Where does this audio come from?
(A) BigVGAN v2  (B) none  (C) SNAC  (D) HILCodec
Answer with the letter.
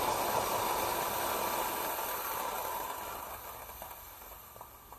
B